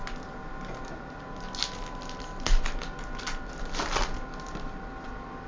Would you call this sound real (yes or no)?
yes